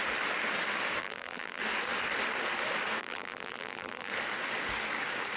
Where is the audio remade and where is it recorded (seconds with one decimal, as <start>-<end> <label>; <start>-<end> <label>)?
0.0-1.0 recorded; 1.0-1.6 remade; 1.6-3.0 recorded; 3.0-4.1 remade; 4.1-5.4 recorded